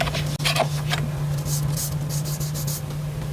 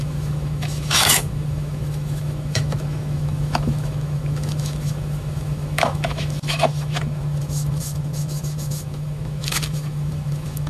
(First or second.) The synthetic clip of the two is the second